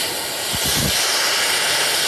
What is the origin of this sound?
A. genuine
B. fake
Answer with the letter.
A